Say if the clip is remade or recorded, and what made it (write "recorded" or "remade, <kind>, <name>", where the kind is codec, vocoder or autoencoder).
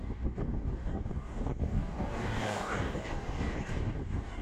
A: remade, codec, DAC